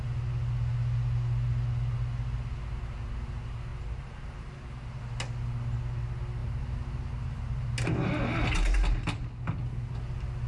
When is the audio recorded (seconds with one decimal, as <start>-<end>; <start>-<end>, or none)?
0.0-3.7; 5.0-6.4; 7.7-10.5